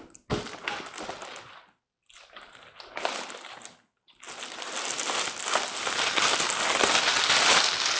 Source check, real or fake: real